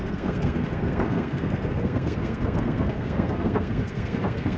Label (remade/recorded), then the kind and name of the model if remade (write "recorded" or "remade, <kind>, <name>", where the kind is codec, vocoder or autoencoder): remade, codec, SNAC